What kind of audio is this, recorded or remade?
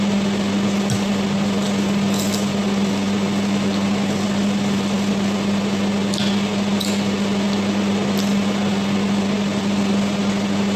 recorded